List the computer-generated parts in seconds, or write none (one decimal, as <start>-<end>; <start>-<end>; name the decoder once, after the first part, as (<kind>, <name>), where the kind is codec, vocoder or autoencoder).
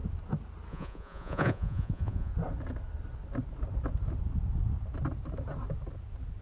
0.7-2.3 (vocoder, Vocos)